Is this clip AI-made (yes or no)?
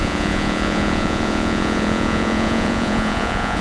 yes